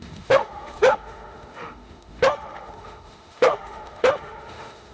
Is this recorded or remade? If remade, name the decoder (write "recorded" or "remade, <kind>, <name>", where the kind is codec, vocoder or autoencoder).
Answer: remade, autoencoder, DAC-VAE